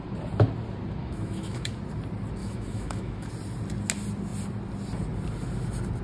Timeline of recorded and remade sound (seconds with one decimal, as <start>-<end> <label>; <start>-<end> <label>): 0.0-1.0 recorded; 1.0-1.7 remade; 1.7-2.4 recorded; 2.4-3.3 remade; 3.3-6.0 recorded